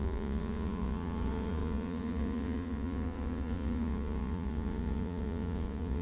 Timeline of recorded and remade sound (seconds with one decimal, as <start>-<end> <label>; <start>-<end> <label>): 0.0-6.0 remade